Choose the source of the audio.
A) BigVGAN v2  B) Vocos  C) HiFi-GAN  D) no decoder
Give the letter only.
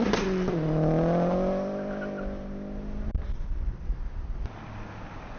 D